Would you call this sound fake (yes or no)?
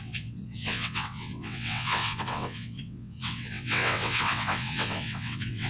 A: yes